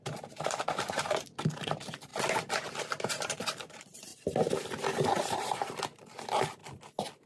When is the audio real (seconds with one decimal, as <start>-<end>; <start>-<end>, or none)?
2.1-3.1; 4.1-4.8; 6.6-7.3